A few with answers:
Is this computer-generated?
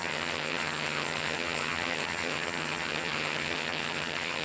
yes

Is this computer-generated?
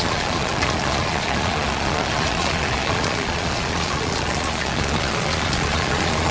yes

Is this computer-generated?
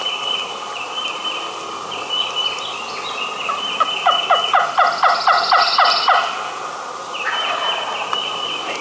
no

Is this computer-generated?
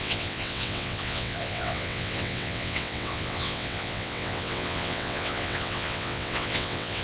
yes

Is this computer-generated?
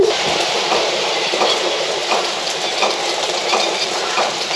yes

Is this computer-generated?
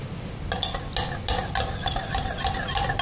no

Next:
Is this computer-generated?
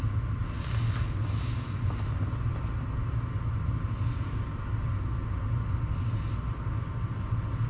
no